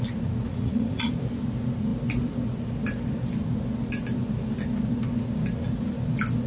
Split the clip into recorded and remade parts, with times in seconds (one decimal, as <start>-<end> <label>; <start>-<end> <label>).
0.0-0.5 recorded; 0.5-1.1 remade; 1.1-6.5 recorded